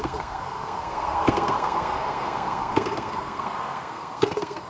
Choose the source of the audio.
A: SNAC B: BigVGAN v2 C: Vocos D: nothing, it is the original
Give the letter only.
A